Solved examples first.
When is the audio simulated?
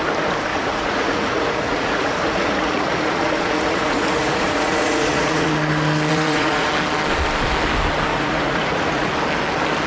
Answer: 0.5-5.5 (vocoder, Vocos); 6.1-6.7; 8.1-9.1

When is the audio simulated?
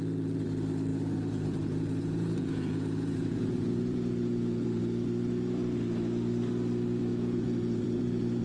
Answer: 0.9-4.8 (vocoder, Vocos); 7.1-8.4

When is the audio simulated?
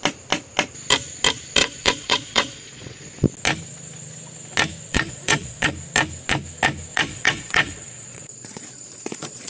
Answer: 1.6-3.1 (vocoder, Vocos); 4.9-5.7; 6.9-9.5